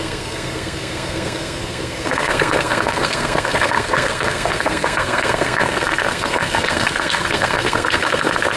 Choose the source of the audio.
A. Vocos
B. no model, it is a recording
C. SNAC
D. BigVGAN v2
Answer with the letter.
C